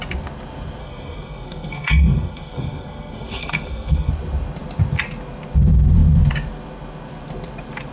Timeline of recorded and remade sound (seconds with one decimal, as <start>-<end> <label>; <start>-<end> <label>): 0.0-0.8 recorded; 0.8-4.1 remade; 4.1-7.9 recorded